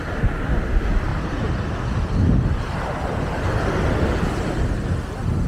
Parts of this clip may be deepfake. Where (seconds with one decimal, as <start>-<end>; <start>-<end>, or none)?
1.1-1.7